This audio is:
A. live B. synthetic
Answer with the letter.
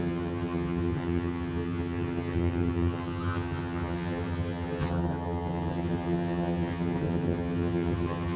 B